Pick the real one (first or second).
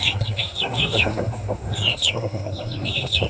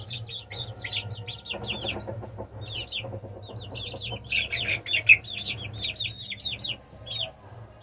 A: second